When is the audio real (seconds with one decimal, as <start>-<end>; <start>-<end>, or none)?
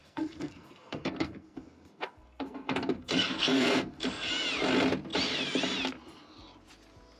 4.3-7.2